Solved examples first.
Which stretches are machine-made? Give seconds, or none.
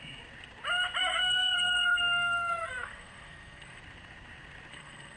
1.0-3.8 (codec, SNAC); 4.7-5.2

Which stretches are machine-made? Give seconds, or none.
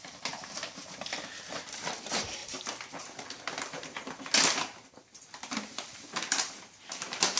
0.0-2.4 (vocoder, BigVGAN v2); 3.0-7.4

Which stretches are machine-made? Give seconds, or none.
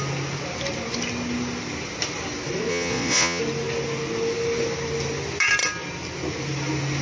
2.7-3.4 (vocoder, Vocos)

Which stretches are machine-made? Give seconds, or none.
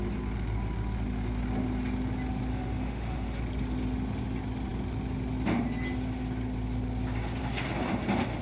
2.5-3.4 (autoencoder, DAC-VAE)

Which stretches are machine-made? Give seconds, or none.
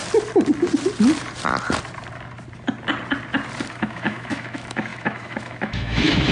3.7-6.3 (autoencoder, DAC-VAE)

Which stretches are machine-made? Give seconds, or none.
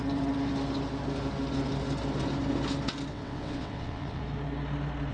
3.1-4.2 (vocoder, WaveNeXt)